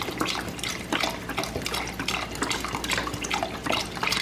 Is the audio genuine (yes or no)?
yes